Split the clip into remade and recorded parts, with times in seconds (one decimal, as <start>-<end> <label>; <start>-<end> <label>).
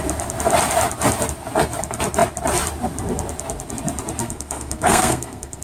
0.0-4.2 recorded; 4.2-5.6 remade